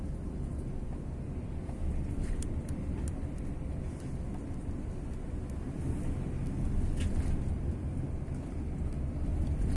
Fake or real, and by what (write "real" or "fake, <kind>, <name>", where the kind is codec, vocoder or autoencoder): real